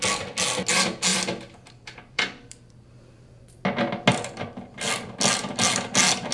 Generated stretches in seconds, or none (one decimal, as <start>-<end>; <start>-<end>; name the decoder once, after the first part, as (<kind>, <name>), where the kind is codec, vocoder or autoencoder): 1.1-2.7 (vocoder, BigVGAN v2); 4.1-4.9